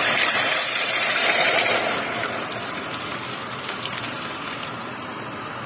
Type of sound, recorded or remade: remade